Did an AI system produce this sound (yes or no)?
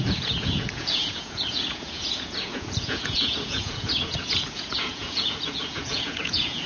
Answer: yes